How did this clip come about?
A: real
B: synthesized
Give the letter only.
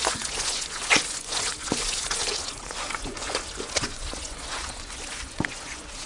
B